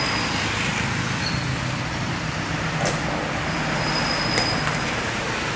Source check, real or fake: real